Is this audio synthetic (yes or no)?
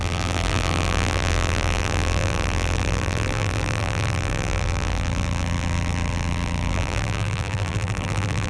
yes